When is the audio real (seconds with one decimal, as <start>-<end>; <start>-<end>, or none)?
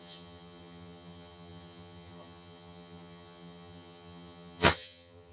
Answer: none